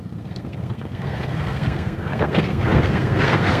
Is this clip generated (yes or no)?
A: yes